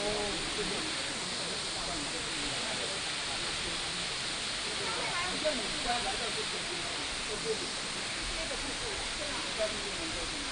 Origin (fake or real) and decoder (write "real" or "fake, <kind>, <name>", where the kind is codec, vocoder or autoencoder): real